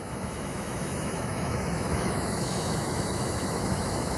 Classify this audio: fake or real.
fake